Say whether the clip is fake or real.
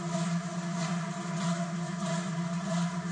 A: real